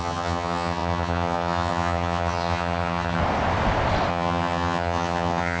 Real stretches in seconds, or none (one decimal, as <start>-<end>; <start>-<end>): 3.2-4.1